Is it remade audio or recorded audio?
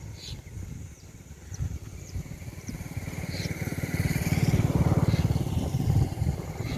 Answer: recorded